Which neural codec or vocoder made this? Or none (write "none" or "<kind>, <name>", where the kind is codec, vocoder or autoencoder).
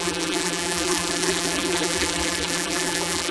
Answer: vocoder, BigVGAN v2